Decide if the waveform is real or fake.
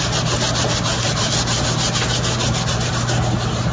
real